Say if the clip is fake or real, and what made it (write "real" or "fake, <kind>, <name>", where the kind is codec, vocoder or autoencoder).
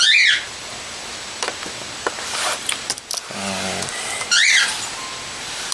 fake, vocoder, BigVGAN v2